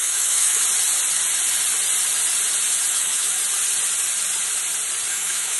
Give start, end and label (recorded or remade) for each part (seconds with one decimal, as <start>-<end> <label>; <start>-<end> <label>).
0.0-0.6 remade; 0.6-2.9 recorded; 2.9-3.4 remade; 3.4-5.1 recorded; 5.1-5.6 remade